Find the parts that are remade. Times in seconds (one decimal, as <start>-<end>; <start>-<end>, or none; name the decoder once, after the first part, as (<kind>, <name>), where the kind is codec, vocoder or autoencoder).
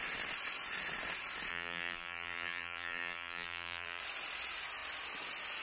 1.5-4.0 (vocoder, BigVGAN v2)